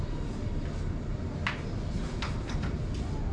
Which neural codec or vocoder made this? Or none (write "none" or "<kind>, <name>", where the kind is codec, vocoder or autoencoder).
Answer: none